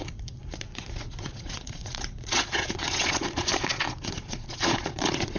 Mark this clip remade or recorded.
remade